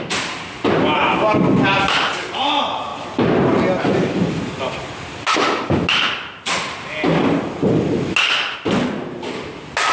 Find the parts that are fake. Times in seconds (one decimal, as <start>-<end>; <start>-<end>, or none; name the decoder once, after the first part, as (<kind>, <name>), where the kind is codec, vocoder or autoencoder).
none